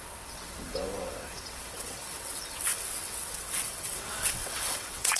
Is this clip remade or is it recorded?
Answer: remade